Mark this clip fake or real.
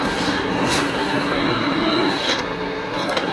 fake